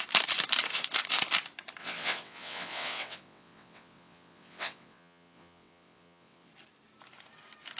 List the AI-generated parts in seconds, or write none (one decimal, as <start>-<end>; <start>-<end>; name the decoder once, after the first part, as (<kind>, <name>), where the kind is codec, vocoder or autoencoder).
1.8-6.5 (vocoder, WaveNeXt)